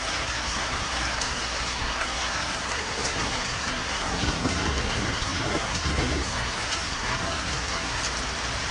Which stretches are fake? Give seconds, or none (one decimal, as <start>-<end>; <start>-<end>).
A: 0.0-8.0